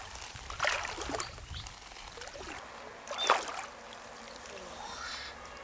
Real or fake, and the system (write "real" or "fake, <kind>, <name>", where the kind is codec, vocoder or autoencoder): real